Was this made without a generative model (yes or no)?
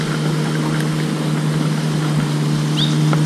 yes